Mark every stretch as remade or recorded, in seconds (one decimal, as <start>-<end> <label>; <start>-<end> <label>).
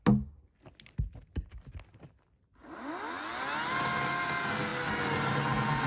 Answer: 0.0-5.9 recorded